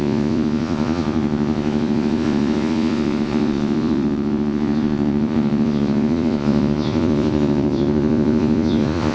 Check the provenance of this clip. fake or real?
fake